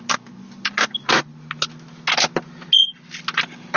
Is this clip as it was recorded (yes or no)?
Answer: yes